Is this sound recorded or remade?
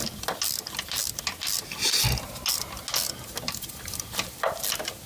recorded